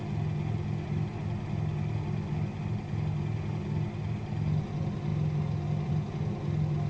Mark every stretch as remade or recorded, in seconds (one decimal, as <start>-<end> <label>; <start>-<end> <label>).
0.0-6.9 recorded